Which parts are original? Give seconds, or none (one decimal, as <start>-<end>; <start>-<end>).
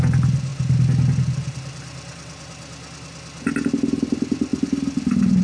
0.0-5.4